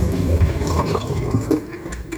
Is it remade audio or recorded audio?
remade